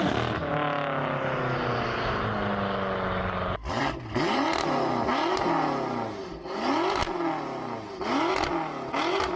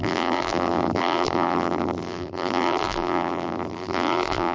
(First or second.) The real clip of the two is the first